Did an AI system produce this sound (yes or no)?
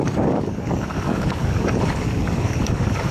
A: yes